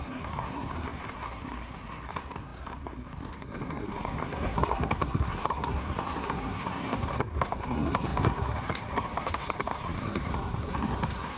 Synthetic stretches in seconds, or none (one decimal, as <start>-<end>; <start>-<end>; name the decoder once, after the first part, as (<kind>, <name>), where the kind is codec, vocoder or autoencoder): 0.0-11.4 (codec, SNAC)